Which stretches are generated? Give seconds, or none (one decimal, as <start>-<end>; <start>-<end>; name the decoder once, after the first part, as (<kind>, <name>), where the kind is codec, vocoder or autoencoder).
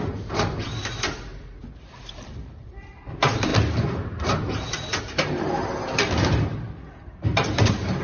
0.0-1.3 (vocoder, BigVGAN v2); 2.1-3.5; 5.0-8.0